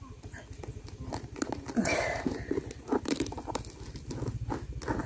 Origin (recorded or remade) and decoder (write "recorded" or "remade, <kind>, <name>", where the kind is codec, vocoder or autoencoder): recorded